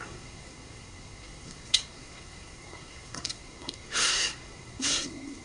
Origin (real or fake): fake